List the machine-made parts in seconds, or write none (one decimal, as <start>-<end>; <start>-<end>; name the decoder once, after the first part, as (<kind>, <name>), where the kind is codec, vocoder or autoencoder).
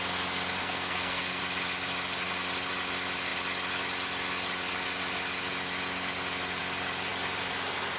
0.6-1.4 (codec, SNAC)